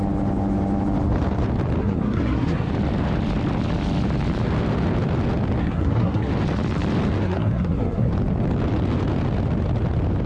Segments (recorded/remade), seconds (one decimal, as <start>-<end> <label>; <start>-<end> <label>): 0.0-1.8 recorded; 1.8-2.7 remade; 2.7-5.6 recorded; 5.6-6.3 remade; 6.3-7.2 recorded; 7.2-8.1 remade; 8.1-10.3 recorded